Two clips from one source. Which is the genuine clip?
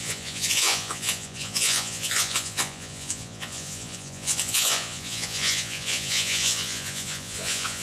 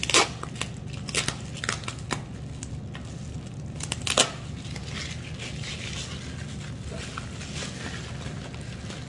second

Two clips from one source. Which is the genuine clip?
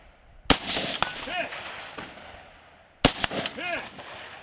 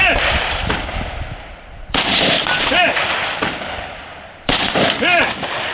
first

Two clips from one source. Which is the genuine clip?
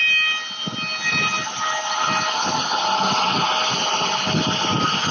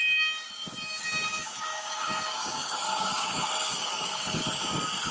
first